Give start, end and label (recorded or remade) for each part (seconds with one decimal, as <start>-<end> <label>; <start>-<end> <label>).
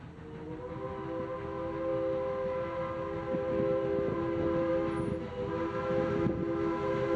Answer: 0.0-7.2 recorded